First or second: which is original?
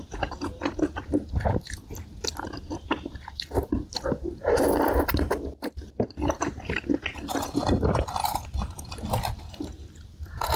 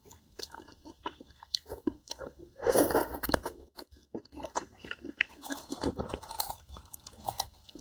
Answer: first